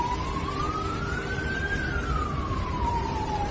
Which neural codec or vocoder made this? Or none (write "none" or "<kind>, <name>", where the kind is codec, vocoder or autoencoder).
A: vocoder, BigVGAN v2